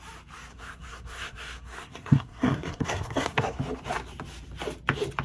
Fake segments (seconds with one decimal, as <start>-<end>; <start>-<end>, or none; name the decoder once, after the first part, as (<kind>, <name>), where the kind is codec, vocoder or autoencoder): 0.5-3.6 (codec, SNAC)